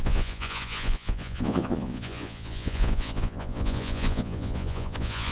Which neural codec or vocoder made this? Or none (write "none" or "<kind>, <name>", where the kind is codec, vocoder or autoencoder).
vocoder, Vocos